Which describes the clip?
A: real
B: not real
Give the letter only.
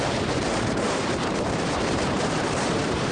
B